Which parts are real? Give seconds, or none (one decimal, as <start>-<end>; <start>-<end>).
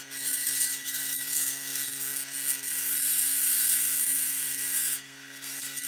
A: none